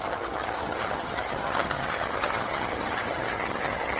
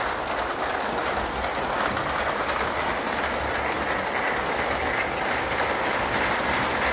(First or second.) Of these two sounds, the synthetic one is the first